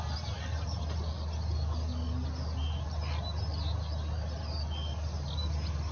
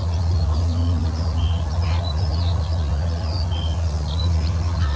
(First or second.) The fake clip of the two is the second